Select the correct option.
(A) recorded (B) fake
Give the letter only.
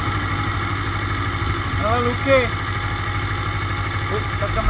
A